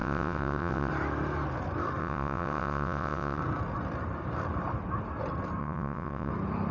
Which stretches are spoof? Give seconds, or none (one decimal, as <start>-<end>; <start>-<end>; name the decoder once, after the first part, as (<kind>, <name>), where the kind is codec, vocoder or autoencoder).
0.0-0.9 (vocoder, WaveNeXt); 2.0-3.4; 5.6-6.3